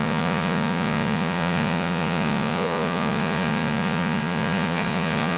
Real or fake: fake